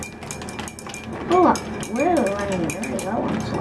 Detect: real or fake real